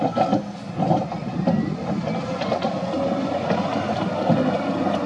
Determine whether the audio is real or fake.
real